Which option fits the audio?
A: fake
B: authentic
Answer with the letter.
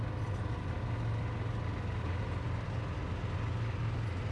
B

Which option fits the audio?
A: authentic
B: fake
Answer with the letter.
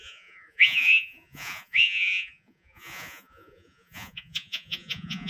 B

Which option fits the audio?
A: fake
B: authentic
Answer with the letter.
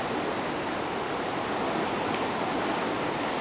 B